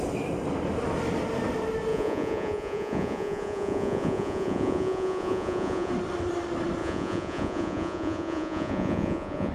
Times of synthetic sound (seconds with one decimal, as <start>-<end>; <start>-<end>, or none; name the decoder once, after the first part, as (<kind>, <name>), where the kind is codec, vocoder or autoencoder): 1.9-5.9 (vocoder, Vocos); 6.8-9.5